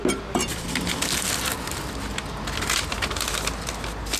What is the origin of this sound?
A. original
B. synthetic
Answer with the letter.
A